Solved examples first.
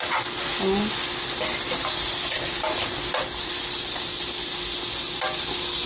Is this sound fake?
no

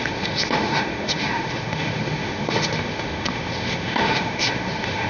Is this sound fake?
yes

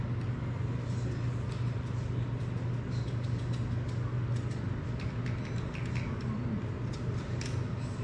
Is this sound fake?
no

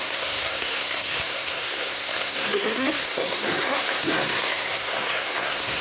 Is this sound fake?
yes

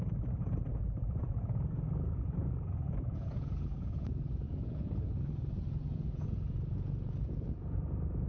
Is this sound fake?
yes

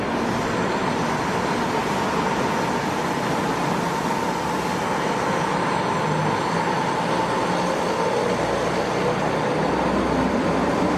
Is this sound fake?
no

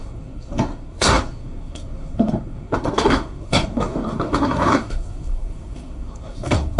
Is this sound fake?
yes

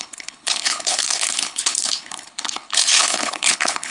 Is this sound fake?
yes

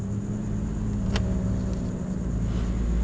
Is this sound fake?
no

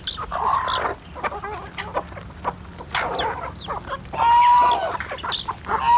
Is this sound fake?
no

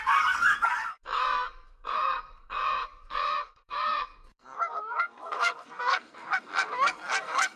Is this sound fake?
yes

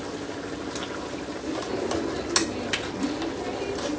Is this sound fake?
no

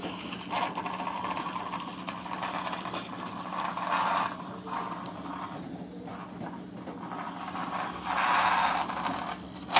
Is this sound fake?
no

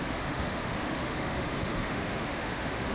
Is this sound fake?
yes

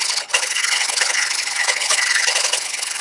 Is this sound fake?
yes